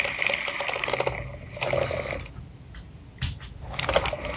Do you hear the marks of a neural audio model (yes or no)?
no